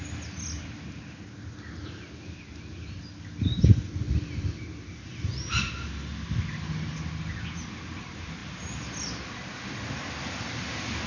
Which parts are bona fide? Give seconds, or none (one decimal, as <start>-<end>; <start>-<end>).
0.0-11.1